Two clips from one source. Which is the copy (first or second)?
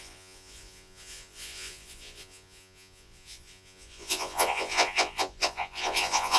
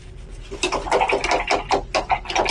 first